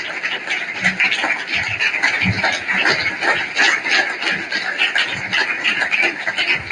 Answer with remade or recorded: recorded